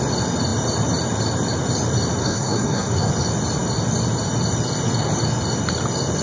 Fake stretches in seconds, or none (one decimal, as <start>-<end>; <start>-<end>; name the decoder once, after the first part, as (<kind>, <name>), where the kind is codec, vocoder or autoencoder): 2.2-3.1 (codec, SNAC)